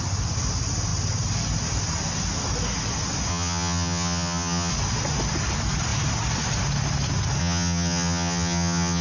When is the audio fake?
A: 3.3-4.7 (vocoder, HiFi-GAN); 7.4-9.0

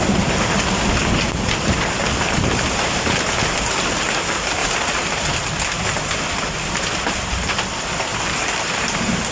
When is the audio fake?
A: 8.1-9.3 (vocoder, BigVGAN v2)

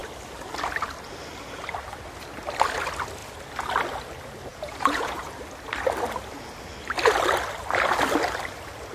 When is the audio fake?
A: 4.5-5.2 (vocoder, Vocos)

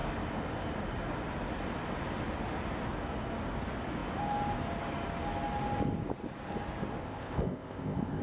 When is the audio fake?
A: 7.0-8.2 (codec, ZipCodec)

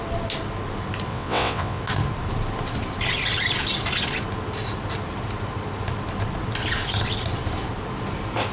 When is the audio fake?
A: 1.1-1.8 (vocoder, WaveNeXt)